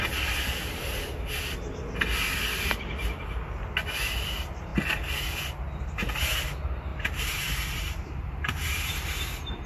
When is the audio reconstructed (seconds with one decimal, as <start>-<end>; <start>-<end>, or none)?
0.0-0.8; 4.1-4.7; 5.8-9.7